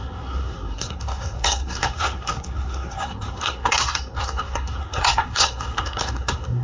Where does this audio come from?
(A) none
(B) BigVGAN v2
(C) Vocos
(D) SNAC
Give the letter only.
D